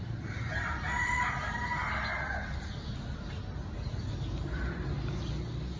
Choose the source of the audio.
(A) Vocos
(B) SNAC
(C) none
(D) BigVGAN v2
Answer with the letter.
C